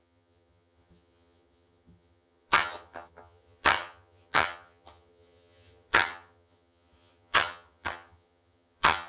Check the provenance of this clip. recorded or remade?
remade